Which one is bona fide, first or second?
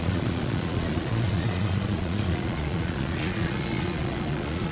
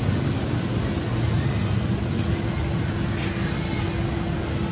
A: second